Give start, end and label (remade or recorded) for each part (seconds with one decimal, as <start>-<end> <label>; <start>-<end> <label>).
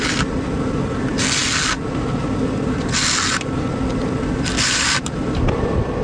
0.0-6.0 recorded